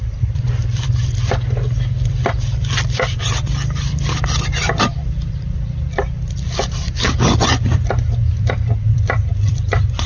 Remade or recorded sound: remade